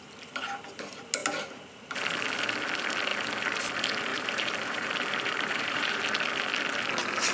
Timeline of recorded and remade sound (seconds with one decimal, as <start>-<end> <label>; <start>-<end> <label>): 0.0-4.1 recorded; 4.1-6.0 remade; 6.0-7.3 recorded